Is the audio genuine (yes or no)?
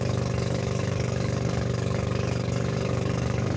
no